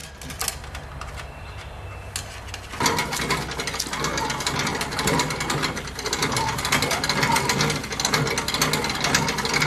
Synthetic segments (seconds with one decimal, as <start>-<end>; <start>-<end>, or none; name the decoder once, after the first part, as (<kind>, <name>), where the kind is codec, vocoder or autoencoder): 4.7-6.8 (vocoder, BigVGAN v2)